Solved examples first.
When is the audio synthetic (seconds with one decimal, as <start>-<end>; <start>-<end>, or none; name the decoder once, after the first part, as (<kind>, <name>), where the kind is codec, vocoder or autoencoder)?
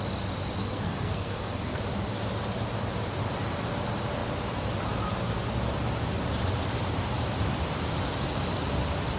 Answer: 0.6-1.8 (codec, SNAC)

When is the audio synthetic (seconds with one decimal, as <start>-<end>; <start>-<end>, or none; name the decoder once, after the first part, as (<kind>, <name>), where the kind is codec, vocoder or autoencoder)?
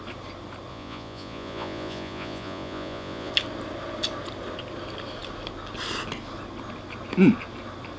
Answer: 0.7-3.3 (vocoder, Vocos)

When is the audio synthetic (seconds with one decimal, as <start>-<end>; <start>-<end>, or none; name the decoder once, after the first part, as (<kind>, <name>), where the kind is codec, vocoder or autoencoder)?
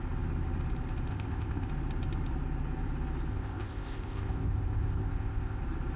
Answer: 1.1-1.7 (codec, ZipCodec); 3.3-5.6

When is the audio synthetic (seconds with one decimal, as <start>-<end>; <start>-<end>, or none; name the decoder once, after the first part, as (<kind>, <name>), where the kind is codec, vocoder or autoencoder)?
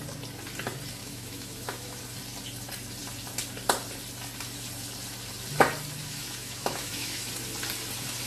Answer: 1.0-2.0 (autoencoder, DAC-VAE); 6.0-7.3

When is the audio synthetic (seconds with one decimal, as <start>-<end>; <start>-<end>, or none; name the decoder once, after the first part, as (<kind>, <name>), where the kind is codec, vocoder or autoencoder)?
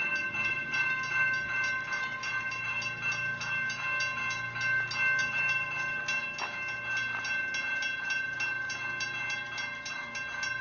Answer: 5.2-6.0 (vocoder, BigVGAN v2)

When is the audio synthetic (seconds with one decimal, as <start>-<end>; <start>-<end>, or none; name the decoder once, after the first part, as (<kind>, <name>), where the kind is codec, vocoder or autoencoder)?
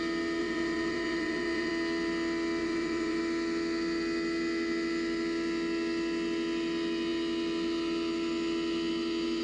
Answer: 0.4-1.7 (vocoder, Vocos); 2.6-3.2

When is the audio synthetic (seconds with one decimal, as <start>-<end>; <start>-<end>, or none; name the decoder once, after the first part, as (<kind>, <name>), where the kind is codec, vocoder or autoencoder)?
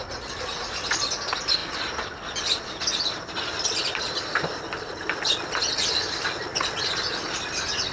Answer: none